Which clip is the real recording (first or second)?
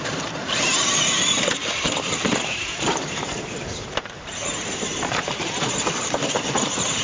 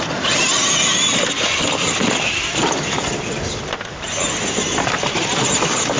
second